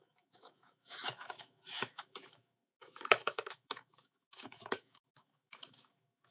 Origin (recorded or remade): remade